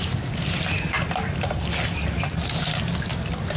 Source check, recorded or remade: recorded